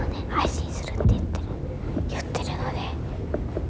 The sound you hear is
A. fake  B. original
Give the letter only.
B